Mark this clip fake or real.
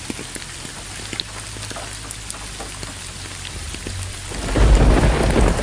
real